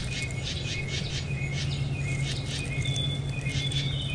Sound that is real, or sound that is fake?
real